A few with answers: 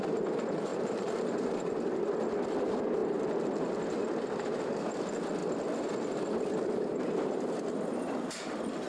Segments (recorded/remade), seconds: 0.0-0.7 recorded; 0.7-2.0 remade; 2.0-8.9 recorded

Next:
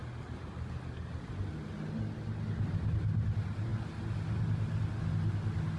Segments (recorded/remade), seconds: 0.0-5.8 recorded

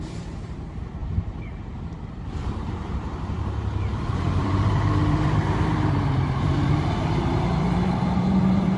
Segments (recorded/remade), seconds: 0.0-8.8 remade

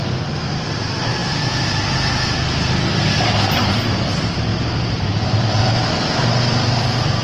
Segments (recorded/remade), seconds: 0.0-4.5 recorded; 4.5-5.9 remade; 5.9-7.2 recorded